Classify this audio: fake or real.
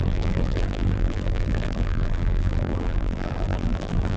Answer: fake